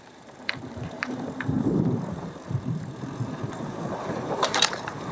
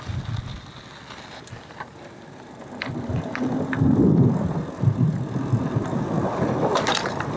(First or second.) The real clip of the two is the second